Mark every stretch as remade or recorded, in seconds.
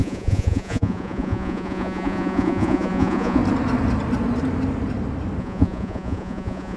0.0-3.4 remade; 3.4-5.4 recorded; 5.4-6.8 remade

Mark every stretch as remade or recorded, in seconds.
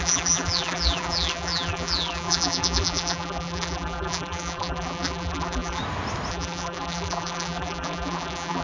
0.0-5.8 remade; 5.8-6.3 recorded; 6.3-8.6 remade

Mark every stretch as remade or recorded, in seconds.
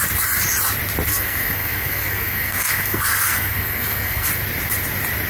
0.0-1.1 recorded; 1.1-4.3 remade; 4.3-5.3 recorded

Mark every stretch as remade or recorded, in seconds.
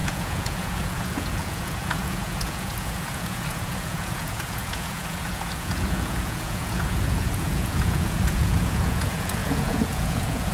0.0-10.5 remade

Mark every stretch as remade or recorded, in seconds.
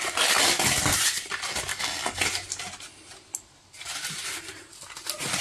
0.0-1.7 recorded; 1.7-2.2 remade; 2.2-5.4 recorded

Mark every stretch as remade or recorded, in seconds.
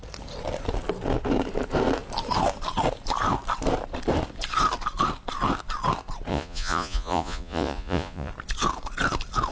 0.0-6.3 recorded; 6.3-8.3 remade; 8.3-9.5 recorded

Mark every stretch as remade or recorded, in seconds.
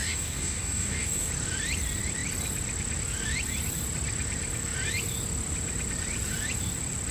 0.0-1.3 remade; 1.3-7.1 recorded